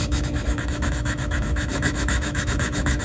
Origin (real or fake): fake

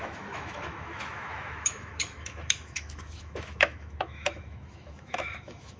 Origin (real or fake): fake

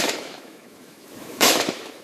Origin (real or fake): fake